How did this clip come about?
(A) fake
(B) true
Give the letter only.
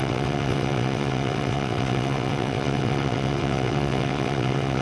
A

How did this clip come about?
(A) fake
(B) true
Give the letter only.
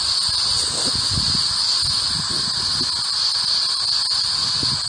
B